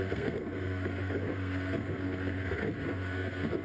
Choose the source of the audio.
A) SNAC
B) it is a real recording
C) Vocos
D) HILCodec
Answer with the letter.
A